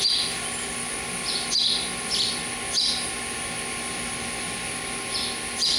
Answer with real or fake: real